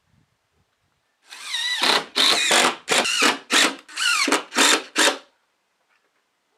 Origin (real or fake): real